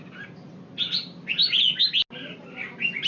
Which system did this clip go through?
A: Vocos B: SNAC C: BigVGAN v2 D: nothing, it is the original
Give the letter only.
D